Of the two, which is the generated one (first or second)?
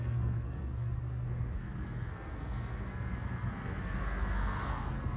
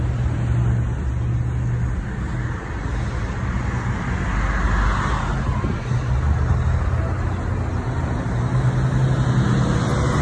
first